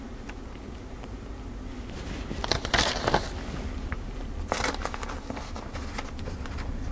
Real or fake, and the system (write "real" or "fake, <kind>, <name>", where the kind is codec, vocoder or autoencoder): real